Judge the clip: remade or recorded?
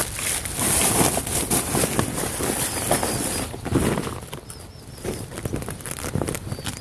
remade